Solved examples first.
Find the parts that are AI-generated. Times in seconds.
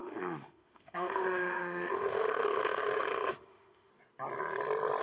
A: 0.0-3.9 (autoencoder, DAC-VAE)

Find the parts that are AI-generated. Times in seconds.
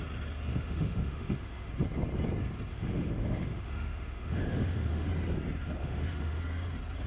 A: 0.5-1.7 (autoencoder, DAC-VAE); 2.7-5.1; 5.8-6.4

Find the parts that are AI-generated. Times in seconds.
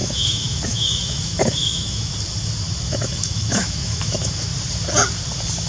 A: 0.0-2.1 (autoencoder, DAC-VAE); 2.9-4.5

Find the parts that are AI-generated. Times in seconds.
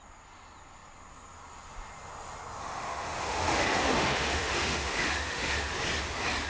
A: 2.6-5.7 (autoencoder, DAC-VAE)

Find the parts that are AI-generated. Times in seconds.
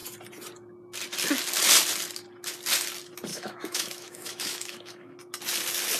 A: 3.3-5.2 (autoencoder, DAC-VAE)